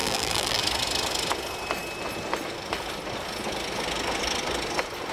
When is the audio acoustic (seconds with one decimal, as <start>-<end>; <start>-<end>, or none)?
0.6-5.1